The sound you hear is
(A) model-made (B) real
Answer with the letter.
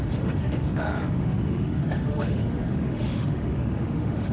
A